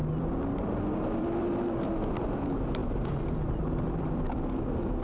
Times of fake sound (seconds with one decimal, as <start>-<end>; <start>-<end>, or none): 0.0-2.8; 3.5-5.0